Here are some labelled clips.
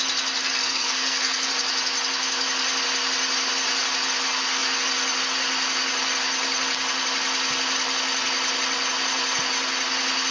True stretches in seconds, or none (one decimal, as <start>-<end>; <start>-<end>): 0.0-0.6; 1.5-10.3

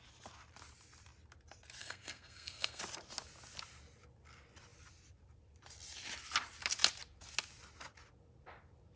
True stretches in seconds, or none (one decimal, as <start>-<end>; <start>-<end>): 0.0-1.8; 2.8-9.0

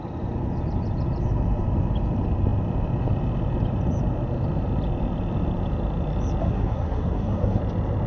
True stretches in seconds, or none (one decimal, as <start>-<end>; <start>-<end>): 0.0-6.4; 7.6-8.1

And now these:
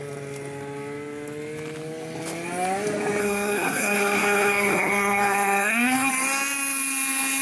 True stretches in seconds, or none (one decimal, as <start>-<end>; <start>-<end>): 0.0-3.2; 6.1-7.4